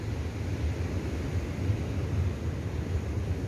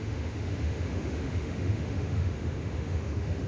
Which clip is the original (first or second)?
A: first